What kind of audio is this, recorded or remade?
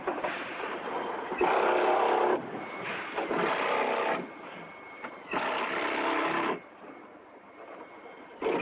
recorded